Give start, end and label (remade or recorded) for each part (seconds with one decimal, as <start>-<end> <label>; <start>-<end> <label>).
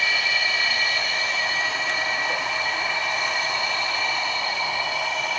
0.0-1.0 recorded; 1.0-1.8 remade; 1.8-5.4 recorded